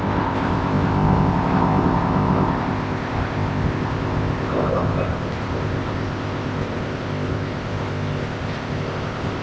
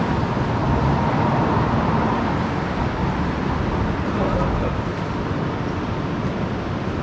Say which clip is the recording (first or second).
second